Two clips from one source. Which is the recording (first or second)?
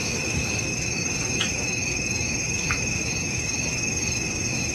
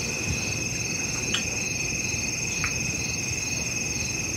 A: second